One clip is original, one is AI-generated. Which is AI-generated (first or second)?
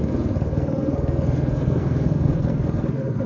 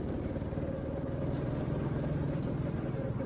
first